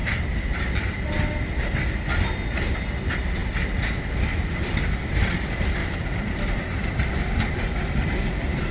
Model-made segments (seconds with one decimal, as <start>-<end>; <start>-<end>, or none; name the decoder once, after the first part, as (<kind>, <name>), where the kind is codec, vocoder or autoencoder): 0.0-1.1 (vocoder, BigVGAN v2); 5.8-7.1